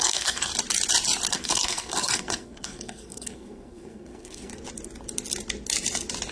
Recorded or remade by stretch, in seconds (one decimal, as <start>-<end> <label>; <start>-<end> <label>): 0.0-0.5 remade; 0.5-1.3 recorded; 1.3-4.5 remade; 4.5-6.3 recorded